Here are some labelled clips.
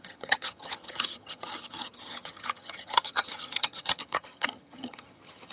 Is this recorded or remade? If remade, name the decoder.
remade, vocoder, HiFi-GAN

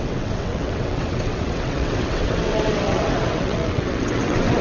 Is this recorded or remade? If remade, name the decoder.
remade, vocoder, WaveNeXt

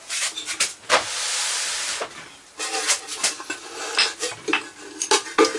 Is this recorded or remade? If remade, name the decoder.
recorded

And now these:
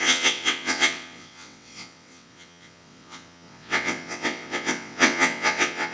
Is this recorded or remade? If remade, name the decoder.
remade, vocoder, WaveNeXt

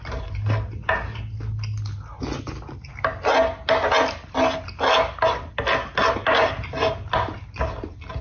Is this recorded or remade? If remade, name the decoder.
recorded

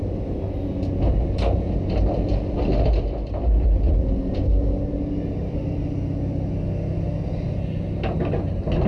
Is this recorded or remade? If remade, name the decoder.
recorded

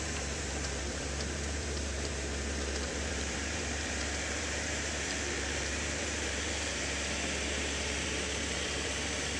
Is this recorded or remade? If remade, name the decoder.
remade, vocoder, BigVGAN v2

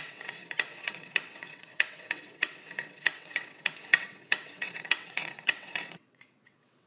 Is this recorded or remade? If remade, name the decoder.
remade, vocoder, WaveNeXt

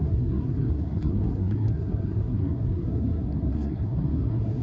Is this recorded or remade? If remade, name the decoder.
remade, codec, SNAC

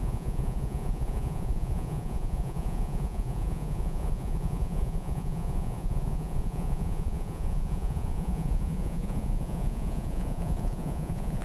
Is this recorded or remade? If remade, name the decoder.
remade, vocoder, Vocos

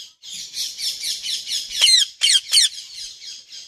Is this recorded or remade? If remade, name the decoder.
recorded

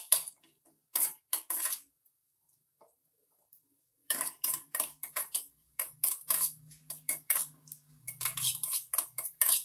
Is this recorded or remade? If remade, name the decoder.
remade, codec, DAC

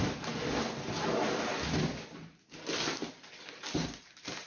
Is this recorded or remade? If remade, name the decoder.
recorded